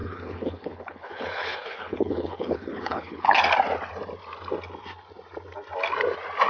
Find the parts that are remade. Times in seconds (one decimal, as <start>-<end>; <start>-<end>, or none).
0.0-3.4